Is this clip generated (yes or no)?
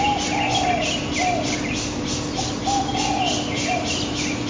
no